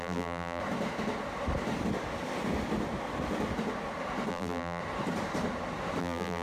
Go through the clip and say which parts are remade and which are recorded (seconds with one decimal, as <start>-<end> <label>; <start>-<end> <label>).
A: 0.0-0.6 remade; 0.6-4.3 recorded; 4.3-4.8 remade; 4.8-6.0 recorded; 6.0-6.4 remade